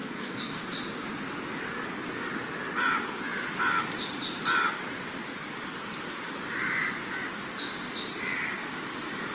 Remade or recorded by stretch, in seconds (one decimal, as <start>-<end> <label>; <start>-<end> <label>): 0.0-0.6 remade; 0.6-9.3 recorded

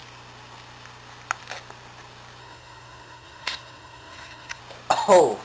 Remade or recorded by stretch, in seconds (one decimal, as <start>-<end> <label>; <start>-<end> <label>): 0.0-2.4 recorded; 2.4-4.6 remade; 4.6-5.4 recorded

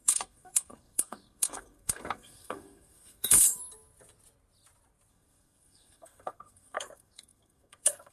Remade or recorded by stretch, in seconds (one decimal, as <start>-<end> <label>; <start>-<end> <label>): 0.0-3.6 remade; 3.6-5.1 recorded; 5.1-8.1 remade

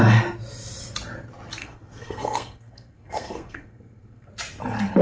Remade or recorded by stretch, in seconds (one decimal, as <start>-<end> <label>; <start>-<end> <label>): 0.0-1.6 recorded; 1.6-4.3 remade; 4.3-5.0 recorded

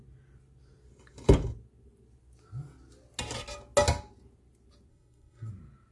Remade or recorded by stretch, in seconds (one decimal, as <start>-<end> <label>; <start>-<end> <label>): 0.0-4.9 recorded; 4.9-5.5 remade; 5.5-5.9 recorded